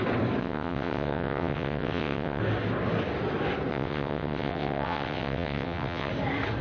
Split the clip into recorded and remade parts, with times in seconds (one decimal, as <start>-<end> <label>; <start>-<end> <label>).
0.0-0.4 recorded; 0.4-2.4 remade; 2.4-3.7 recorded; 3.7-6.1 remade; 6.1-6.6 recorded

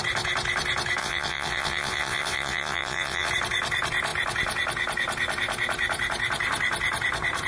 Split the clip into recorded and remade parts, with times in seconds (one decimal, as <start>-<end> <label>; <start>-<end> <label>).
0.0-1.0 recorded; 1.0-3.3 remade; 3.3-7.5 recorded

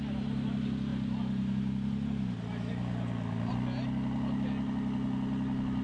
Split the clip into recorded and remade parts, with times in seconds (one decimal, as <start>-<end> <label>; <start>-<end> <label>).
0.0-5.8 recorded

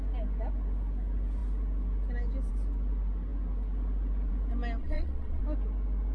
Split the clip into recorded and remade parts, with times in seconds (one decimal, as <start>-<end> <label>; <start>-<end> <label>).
0.0-4.8 recorded; 4.8-5.4 remade; 5.4-6.1 recorded

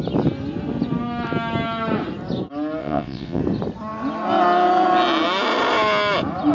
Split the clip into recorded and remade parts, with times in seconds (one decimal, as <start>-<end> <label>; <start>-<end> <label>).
0.0-2.8 recorded; 2.8-3.4 remade; 3.4-6.5 recorded

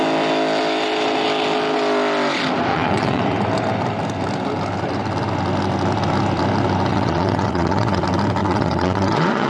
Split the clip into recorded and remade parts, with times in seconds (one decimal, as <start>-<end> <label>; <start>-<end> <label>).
0.0-2.7 recorded; 2.7-3.2 remade; 3.2-6.9 recorded; 6.9-8.0 remade; 8.0-8.4 recorded; 8.4-9.5 remade

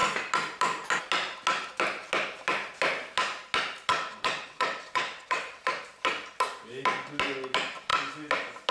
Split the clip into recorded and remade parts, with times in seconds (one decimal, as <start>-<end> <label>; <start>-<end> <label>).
0.0-3.9 recorded; 3.9-5.6 remade; 5.6-8.7 recorded